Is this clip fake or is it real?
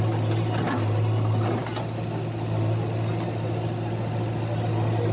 real